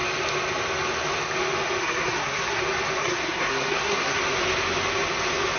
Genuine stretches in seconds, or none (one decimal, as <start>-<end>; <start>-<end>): 0.0-1.8; 2.6-3.0; 4.2-5.6